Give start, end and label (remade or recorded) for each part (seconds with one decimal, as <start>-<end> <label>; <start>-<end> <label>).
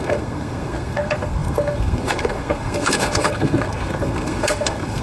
0.0-5.0 remade